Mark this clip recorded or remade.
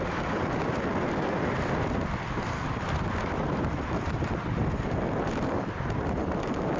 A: recorded